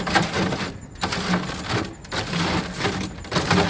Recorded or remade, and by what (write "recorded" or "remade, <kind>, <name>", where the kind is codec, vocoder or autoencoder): recorded